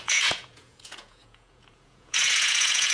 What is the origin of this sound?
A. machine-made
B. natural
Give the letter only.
A